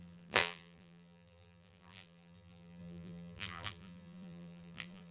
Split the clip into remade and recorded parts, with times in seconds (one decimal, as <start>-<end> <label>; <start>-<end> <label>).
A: 0.0-5.1 remade